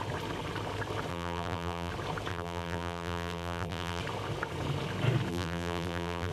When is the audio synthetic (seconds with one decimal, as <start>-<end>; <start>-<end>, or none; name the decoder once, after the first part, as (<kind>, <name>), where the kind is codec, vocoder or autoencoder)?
1.1-1.9 (vocoder, BigVGAN v2); 2.3-4.0; 5.3-6.3